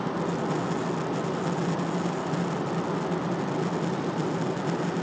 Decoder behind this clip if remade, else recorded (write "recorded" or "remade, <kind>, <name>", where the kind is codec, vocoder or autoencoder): recorded